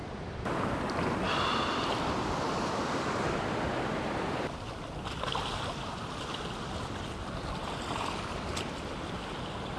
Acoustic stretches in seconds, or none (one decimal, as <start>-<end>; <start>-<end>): 3.4-9.8

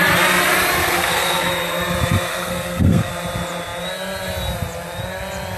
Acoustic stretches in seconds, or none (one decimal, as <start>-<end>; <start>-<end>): 0.0-0.8; 1.5-2.3; 3.1-5.6

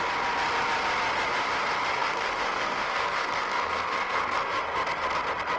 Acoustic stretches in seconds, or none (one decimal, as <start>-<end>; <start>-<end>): 0.0-1.9; 4.5-5.6

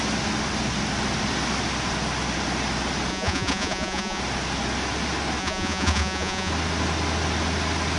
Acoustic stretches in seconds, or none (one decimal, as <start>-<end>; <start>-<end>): 0.0-3.1; 4.2-5.4; 6.5-8.0